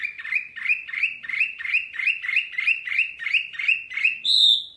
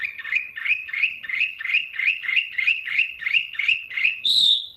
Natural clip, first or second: first